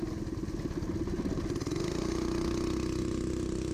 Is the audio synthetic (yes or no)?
no